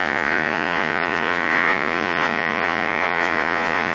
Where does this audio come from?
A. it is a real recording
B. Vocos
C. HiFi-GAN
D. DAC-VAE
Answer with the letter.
B